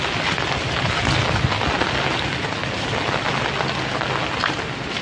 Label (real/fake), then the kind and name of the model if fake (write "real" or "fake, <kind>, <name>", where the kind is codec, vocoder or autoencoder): real